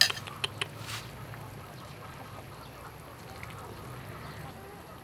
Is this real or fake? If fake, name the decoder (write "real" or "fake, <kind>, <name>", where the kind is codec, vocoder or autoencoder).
real